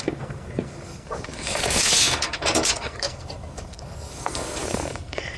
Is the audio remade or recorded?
remade